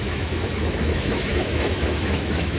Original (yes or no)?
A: no